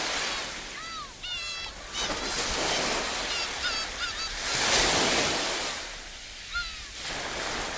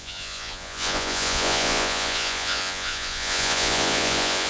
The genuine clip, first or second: first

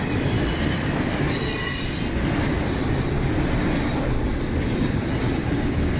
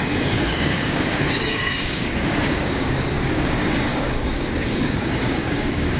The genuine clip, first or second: first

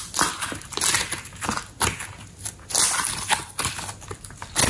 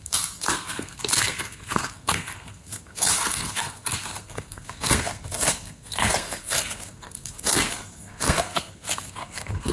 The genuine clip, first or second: first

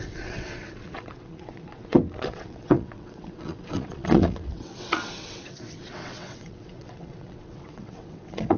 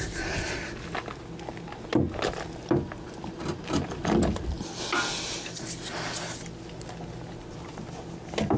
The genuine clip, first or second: second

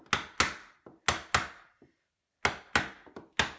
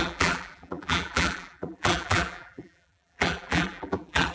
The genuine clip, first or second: first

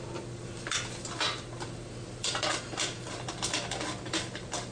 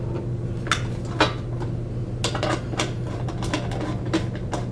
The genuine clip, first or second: second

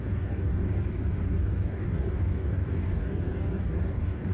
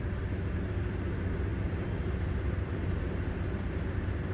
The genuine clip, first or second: second